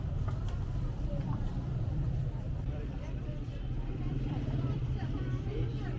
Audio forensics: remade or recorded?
remade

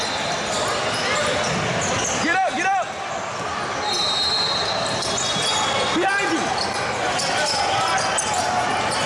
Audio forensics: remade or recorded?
recorded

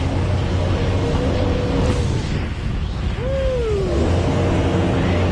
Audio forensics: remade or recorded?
recorded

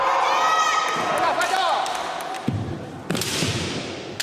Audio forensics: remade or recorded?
recorded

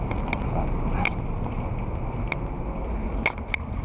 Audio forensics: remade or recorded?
recorded